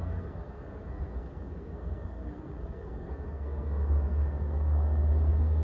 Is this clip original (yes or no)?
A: no